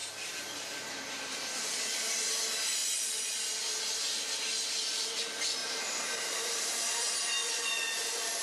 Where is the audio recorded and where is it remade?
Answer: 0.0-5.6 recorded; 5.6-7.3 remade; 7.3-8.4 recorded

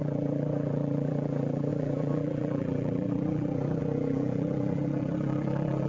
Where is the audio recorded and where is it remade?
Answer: 0.0-5.9 remade

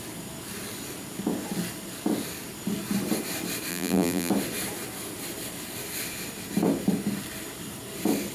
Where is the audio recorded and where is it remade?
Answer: 0.0-3.7 recorded; 3.7-4.3 remade; 4.3-8.3 recorded

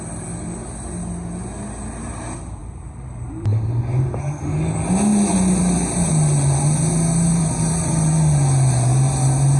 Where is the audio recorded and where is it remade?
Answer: 0.0-2.6 recorded; 2.6-3.8 remade; 3.8-5.1 recorded; 5.1-6.1 remade; 6.1-7.3 recorded; 7.3-8.1 remade; 8.1-9.6 recorded

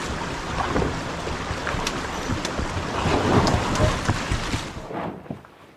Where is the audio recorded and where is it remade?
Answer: 0.0-3.3 recorded; 3.3-3.9 remade; 3.9-5.8 recorded

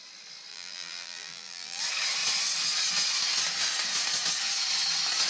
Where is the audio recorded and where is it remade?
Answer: 0.0-0.5 recorded; 0.5-1.8 remade; 1.8-5.3 recorded

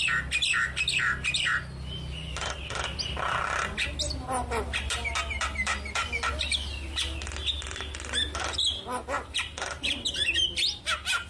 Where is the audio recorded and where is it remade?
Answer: 0.0-11.3 recorded

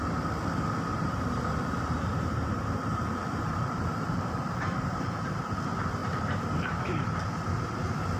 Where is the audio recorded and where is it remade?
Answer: 0.0-0.9 recorded; 0.9-5.6 remade; 5.6-6.0 recorded; 6.0-7.3 remade; 7.3-8.2 recorded